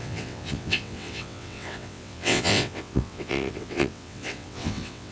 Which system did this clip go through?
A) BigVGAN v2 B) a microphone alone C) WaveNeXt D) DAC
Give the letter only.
C